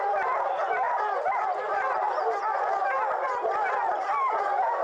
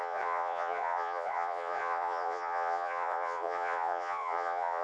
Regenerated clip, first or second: second